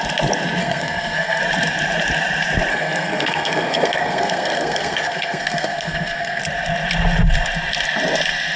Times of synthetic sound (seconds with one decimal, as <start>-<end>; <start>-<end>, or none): 0.6-1.4; 2.7-6.4